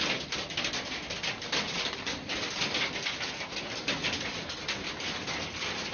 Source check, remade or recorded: recorded